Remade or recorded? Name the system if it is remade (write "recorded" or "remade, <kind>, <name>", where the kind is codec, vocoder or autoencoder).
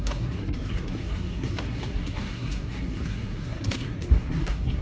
remade, codec, SNAC